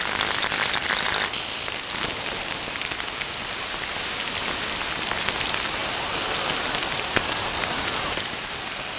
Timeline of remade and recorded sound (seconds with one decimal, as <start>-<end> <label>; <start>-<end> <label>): 0.0-9.0 recorded

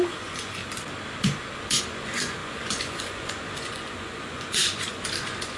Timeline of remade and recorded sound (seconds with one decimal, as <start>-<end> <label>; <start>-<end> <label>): 0.0-0.6 remade; 0.6-1.8 recorded; 1.8-5.6 remade

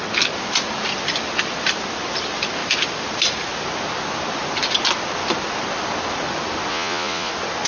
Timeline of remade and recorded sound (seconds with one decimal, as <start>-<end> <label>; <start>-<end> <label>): 0.0-6.7 recorded; 6.7-7.3 remade; 7.3-7.7 recorded

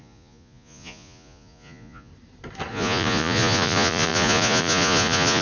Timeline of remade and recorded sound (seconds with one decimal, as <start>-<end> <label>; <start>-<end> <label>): 0.0-2.1 remade; 2.1-2.7 recorded; 2.7-5.4 remade

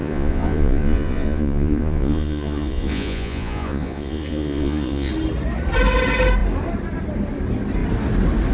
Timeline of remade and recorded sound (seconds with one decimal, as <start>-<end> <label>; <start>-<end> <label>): 0.0-5.1 remade; 5.1-8.5 recorded

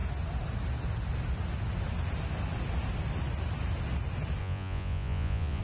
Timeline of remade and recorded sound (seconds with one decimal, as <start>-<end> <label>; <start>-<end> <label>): 0.0-4.4 recorded; 4.4-5.6 remade